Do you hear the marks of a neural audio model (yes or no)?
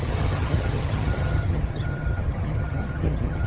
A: yes